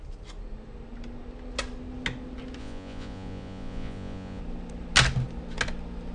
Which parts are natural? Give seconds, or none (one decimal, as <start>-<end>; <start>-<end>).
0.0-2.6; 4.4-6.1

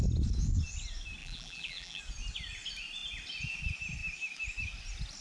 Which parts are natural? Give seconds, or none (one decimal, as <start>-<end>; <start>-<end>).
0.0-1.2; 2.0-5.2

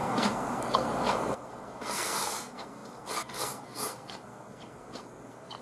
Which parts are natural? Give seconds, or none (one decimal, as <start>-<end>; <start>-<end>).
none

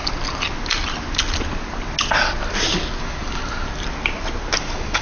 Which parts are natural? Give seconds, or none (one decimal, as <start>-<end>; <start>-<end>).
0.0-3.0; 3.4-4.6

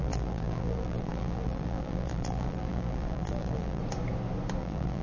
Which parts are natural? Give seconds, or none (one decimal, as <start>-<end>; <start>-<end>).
3.8-4.6

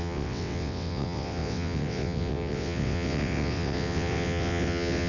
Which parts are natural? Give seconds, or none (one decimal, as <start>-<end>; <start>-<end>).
none